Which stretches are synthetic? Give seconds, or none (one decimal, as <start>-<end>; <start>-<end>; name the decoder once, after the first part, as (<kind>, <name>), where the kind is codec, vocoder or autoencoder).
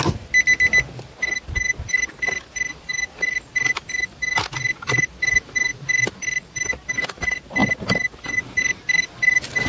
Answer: none